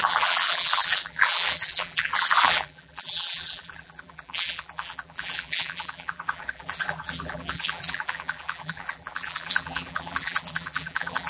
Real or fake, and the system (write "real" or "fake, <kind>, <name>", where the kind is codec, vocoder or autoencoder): fake, vocoder, BigVGAN v2